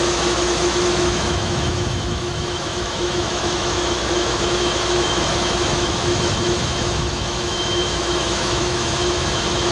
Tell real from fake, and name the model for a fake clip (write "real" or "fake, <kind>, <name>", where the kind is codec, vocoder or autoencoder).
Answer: fake, autoencoder, DAC-VAE